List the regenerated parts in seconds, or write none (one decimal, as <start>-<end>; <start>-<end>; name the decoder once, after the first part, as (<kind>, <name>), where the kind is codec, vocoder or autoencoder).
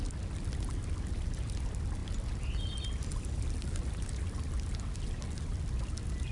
none